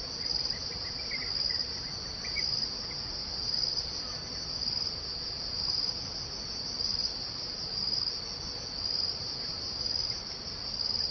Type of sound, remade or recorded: recorded